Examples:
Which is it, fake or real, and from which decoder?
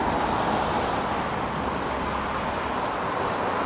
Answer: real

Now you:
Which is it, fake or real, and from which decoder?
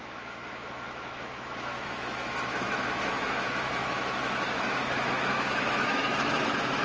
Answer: fake, autoencoder, DAC-VAE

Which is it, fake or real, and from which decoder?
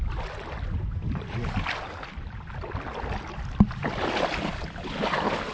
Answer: real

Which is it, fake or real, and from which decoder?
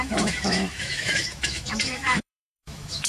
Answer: fake, autoencoder, DAC-VAE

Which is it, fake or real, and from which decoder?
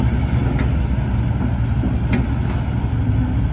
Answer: real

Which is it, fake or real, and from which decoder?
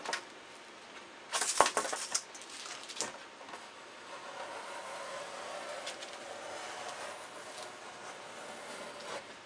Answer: real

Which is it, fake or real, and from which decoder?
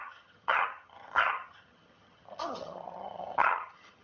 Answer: fake, vocoder, HiFi-GAN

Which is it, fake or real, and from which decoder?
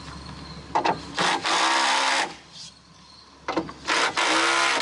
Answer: real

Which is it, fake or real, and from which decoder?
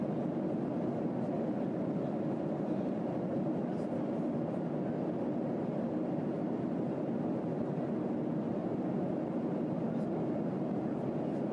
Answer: real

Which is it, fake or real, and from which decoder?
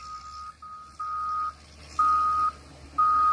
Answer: real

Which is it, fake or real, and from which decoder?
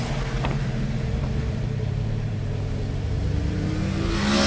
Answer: fake, vocoder, BigVGAN v2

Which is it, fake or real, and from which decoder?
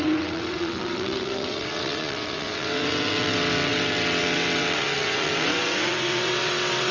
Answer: fake, vocoder, WaveNeXt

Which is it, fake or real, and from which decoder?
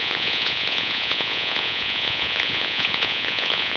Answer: fake, vocoder, Vocos